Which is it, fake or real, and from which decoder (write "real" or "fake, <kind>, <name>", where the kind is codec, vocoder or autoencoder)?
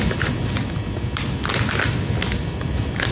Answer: real